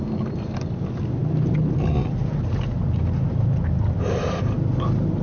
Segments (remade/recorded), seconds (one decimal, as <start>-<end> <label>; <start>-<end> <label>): 0.0-5.2 recorded